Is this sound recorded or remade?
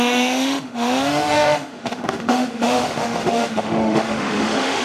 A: remade